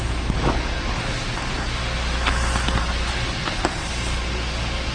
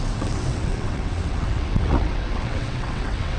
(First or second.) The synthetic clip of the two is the second